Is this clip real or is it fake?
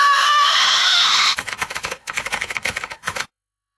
fake